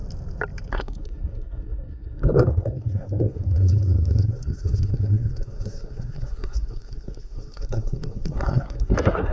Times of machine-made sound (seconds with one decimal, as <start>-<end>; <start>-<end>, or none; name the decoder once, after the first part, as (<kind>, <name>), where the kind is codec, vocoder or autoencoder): 0.7-9.3 (codec, SNAC)